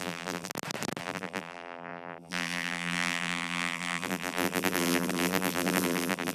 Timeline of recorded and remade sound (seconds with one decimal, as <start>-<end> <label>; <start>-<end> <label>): 0.0-0.5 remade; 0.5-1.0 recorded; 1.0-6.3 remade